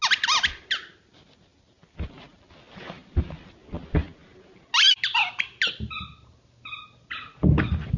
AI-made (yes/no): no